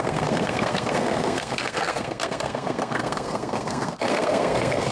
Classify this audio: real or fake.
fake